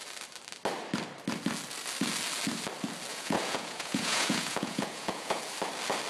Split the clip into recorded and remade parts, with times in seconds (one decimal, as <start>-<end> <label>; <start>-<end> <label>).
0.0-3.1 recorded; 3.1-5.4 remade; 5.4-6.1 recorded